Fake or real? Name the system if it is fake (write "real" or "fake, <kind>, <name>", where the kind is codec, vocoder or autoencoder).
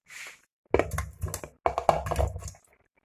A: real